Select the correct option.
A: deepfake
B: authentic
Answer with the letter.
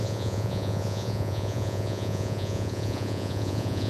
A